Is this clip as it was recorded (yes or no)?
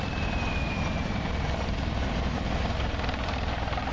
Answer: no